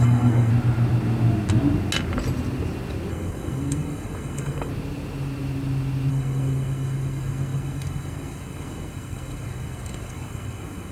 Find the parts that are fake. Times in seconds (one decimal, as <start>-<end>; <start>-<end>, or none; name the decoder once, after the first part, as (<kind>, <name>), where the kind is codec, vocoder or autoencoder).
0.0-0.5 (codec, SNAC); 3.1-4.7; 6.1-10.9